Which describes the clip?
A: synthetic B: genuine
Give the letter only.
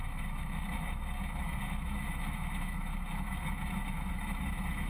A